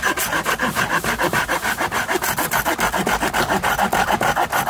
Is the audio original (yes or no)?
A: yes